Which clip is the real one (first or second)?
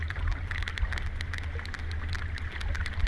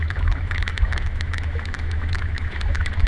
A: first